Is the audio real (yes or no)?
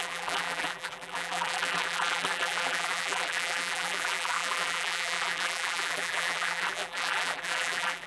no